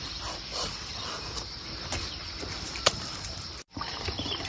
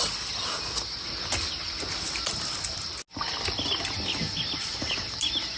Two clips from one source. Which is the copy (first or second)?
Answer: first